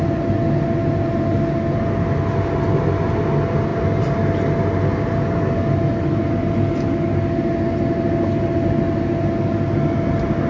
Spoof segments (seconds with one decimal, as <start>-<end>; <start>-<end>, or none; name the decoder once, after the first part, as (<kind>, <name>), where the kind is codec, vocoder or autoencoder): none